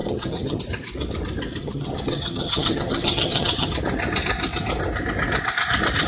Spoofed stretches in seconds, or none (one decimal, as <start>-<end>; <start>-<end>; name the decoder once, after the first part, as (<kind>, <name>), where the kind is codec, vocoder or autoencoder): 0.0-0.6 (vocoder, HiFi-GAN); 1.6-3.7